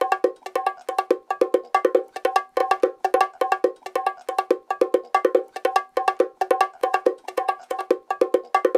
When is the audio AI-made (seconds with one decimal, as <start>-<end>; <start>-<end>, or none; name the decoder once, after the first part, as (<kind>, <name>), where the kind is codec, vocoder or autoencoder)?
6.8-7.8 (vocoder, Vocos)